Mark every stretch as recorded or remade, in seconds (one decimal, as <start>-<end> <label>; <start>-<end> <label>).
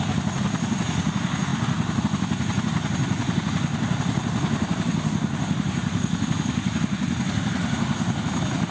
0.0-8.7 recorded